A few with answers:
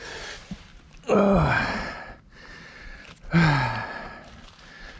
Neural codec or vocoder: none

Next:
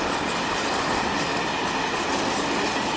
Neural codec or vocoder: none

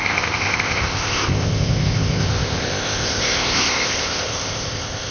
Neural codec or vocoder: codec, ZipCodec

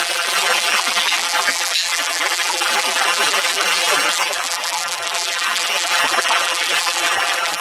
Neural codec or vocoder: vocoder, BigVGAN v2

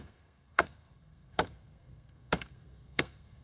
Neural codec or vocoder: codec, SNAC